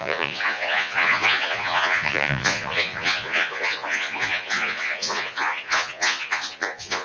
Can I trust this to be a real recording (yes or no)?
no